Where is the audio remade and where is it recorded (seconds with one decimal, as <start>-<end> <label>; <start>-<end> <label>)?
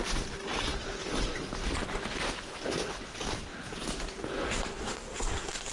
0.0-4.8 recorded; 4.8-5.7 remade